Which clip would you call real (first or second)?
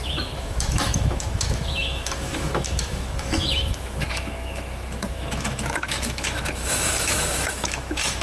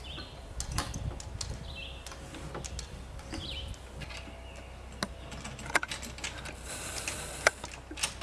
second